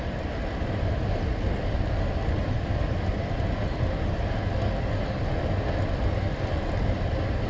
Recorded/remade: recorded